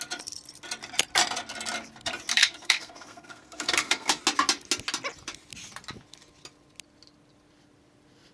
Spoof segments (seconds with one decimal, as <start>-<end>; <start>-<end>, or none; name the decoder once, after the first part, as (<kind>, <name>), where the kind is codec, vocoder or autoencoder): 2.3-4.2 (codec, SNAC)